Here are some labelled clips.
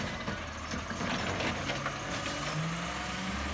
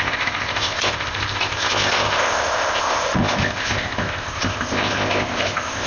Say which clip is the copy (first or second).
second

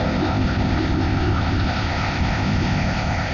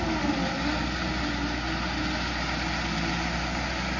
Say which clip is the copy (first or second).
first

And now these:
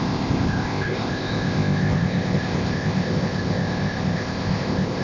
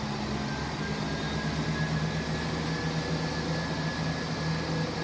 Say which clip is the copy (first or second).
first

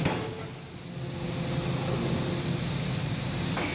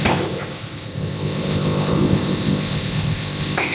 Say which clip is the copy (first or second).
second